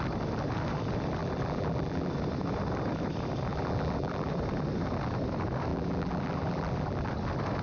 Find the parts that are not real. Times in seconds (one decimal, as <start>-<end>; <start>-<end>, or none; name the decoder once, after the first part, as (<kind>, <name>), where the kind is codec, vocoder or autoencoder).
1.2-2.1 (vocoder, BigVGAN v2); 3.5-4.3; 5.7-7.1